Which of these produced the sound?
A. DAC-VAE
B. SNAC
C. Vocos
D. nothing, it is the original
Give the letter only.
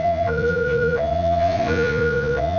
C